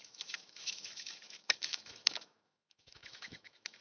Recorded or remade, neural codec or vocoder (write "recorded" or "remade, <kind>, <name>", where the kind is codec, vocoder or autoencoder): remade, autoencoder, DAC-VAE